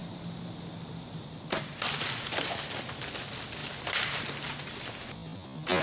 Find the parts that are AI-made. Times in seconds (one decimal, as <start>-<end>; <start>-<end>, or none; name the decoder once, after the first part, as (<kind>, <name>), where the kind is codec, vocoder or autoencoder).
none